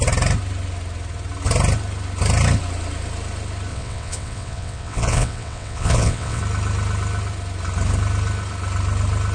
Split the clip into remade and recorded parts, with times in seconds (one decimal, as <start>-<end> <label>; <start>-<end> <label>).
0.0-3.7 recorded; 3.7-6.4 remade; 6.4-9.3 recorded